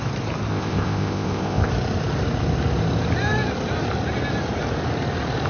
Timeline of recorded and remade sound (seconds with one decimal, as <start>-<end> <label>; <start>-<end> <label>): 0.0-0.5 recorded; 0.5-1.7 remade; 1.7-5.5 recorded